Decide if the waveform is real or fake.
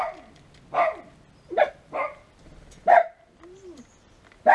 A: real